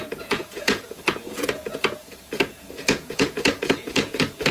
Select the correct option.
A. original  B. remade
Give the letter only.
B